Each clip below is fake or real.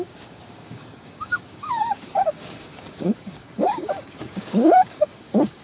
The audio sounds fake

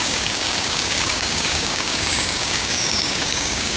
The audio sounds fake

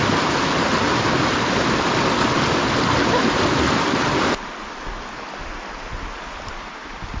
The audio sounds real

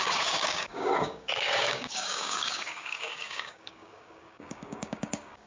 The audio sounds fake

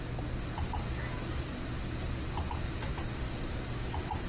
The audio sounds real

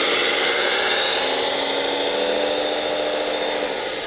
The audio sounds real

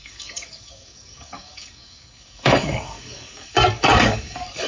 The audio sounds fake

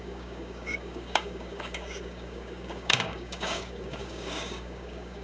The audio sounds fake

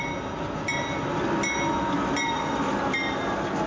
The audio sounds real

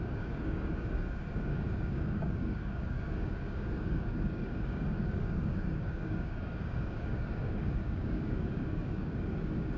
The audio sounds fake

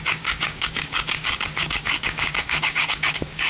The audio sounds fake